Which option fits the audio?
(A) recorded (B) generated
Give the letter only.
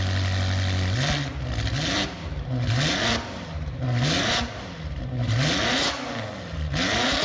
A